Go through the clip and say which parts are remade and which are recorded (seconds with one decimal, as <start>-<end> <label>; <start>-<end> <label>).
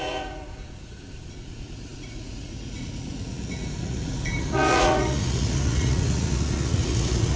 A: 0.0-7.4 remade